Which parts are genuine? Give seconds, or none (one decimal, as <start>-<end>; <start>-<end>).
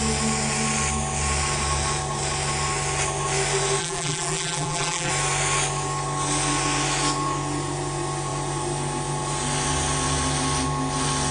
0.0-3.8; 5.1-11.3